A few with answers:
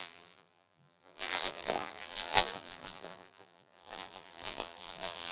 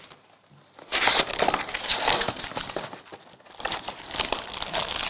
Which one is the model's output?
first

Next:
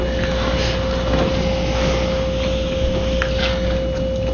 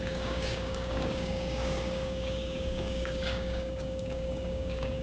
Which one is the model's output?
second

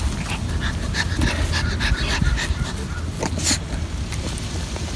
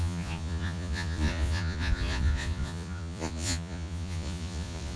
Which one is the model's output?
second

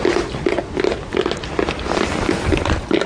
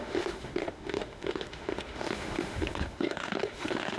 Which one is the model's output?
second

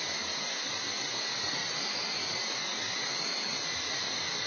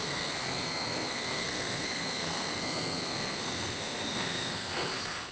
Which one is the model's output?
second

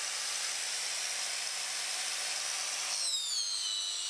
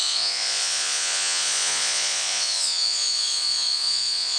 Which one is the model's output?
second